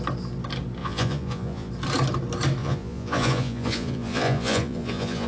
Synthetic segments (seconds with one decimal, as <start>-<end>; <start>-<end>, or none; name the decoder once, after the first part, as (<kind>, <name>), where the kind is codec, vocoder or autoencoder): 0.8-1.7 (vocoder, Vocos); 2.6-5.3